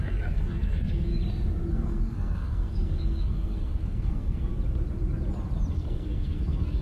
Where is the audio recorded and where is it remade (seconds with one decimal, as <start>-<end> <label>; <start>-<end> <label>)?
0.0-1.1 remade; 1.1-1.7 recorded; 1.7-4.5 remade; 4.5-5.7 recorded; 5.7-6.8 remade